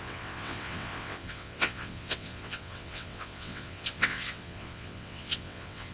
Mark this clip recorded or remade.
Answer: remade